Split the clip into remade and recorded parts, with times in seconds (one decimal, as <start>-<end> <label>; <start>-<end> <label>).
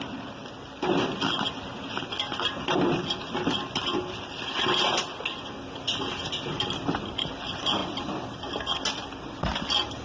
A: 0.0-10.0 recorded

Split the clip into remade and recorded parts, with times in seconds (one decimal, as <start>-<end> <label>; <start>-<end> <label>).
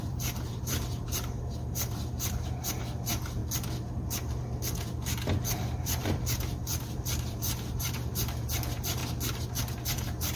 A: 0.0-3.4 remade; 3.4-5.8 recorded; 5.8-9.0 remade; 9.0-9.7 recorded; 9.7-10.4 remade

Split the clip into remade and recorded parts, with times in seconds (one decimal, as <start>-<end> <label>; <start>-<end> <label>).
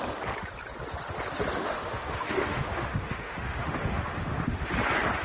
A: 0.0-1.6 recorded; 1.6-4.7 remade; 4.7-5.2 recorded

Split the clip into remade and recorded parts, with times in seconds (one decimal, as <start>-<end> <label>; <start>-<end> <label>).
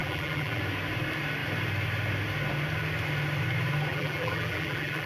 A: 0.0-0.6 remade; 0.6-3.9 recorded; 3.9-5.1 remade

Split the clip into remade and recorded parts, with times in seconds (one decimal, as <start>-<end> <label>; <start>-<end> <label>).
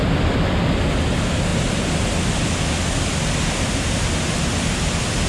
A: 0.0-5.3 recorded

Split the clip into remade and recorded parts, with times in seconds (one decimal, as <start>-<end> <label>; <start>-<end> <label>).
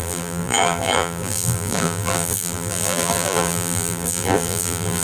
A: 0.0-5.0 remade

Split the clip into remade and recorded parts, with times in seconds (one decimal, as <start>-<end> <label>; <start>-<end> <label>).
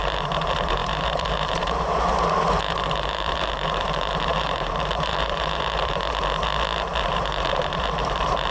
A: 0.0-6.0 remade; 6.0-7.1 recorded; 7.1-8.5 remade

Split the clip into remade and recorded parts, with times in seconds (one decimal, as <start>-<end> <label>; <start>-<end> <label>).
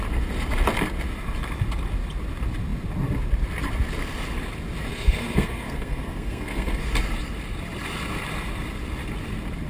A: 0.0-4.9 recorded; 4.9-6.9 remade; 6.9-9.7 recorded